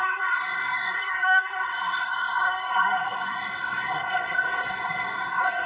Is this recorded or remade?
remade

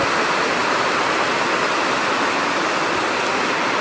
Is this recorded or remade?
recorded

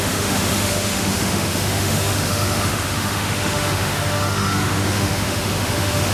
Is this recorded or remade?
remade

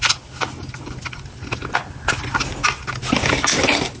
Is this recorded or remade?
recorded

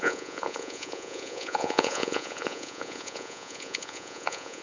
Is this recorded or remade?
remade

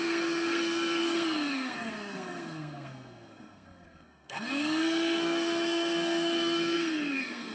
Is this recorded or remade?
remade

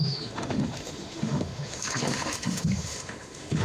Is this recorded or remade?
remade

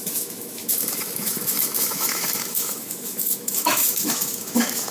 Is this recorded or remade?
remade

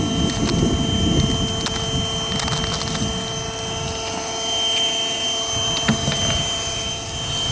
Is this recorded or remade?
recorded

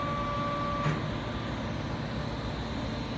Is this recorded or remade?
recorded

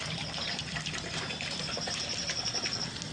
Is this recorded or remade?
recorded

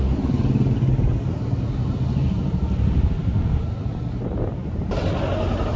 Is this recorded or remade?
recorded